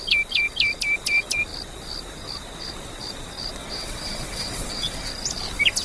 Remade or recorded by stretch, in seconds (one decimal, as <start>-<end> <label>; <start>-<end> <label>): 0.0-3.6 recorded; 3.6-5.1 remade; 5.1-5.8 recorded